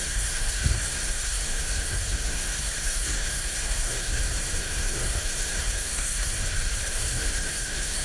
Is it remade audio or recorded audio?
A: remade